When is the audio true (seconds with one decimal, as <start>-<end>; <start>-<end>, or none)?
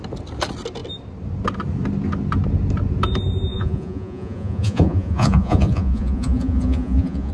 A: 0.0-3.5